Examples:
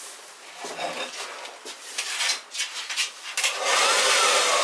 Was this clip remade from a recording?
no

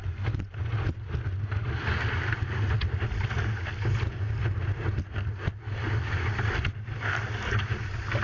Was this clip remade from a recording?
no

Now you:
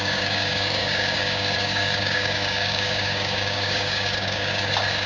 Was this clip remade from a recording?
yes